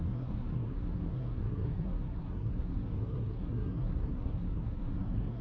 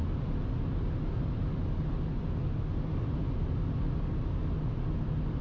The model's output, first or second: first